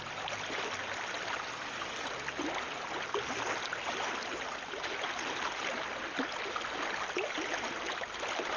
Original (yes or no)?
yes